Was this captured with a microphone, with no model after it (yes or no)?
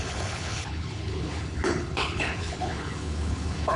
no